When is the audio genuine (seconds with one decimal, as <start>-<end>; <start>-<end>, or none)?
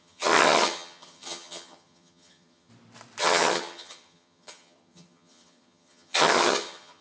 2.7-3.2